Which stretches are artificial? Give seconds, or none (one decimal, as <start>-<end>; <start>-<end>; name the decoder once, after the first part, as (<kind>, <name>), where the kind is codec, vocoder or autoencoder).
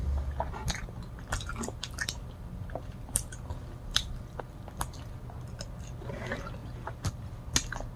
0.0-4.4 (vocoder, BigVGAN v2); 6.6-7.3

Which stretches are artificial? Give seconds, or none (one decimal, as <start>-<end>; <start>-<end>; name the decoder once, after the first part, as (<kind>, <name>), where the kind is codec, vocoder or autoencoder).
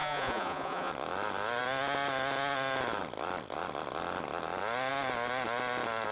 0.0-0.9 (vocoder, Vocos)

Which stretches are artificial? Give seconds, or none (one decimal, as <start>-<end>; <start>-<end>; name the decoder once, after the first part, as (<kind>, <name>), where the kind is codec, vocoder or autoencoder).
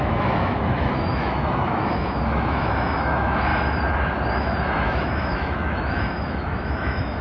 0.0-3.5 (autoencoder, DAC-VAE); 4.4-7.2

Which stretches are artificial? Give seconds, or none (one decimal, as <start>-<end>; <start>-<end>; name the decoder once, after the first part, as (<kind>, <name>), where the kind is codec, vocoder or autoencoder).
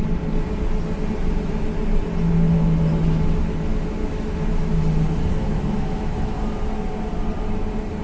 2.9-3.5 (autoencoder, DAC-VAE); 4.0-4.7; 5.5-6.4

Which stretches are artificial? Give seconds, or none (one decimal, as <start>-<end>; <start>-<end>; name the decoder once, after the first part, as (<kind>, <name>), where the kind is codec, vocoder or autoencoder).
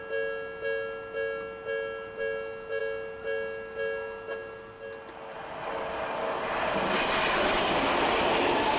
none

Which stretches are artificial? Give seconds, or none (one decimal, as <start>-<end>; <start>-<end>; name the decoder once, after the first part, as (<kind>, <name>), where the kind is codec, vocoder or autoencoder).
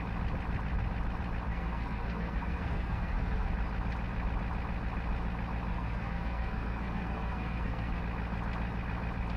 1.5-3.5 (codec, SNAC); 5.7-8.0